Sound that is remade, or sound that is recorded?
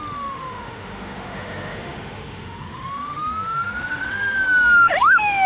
remade